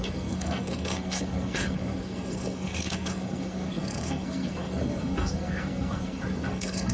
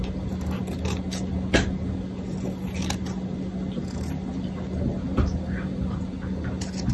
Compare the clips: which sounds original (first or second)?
second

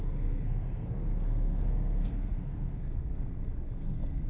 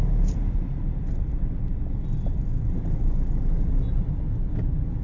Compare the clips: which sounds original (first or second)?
second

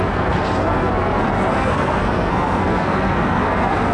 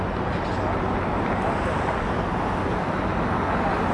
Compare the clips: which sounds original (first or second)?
second